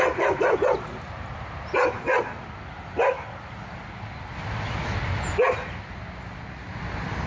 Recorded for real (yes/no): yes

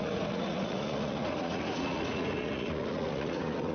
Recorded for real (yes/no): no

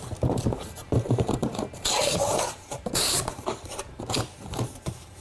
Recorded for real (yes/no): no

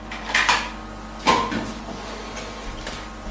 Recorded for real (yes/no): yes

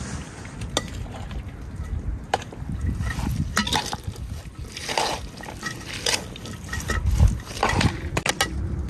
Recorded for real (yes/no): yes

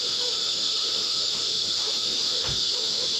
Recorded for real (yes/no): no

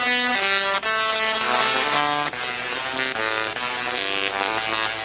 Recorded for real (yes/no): yes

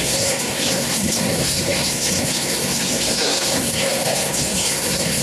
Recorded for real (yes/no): no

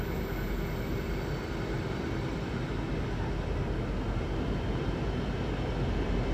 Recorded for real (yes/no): yes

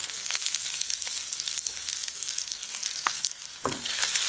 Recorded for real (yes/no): no